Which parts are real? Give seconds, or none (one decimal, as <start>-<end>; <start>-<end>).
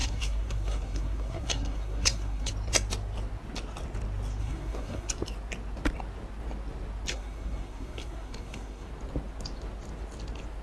2.5-4.4; 5.1-7.1; 8.9-10.6